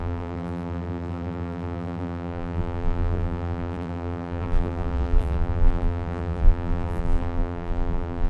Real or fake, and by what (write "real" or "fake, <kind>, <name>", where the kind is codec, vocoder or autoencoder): fake, vocoder, BigVGAN v2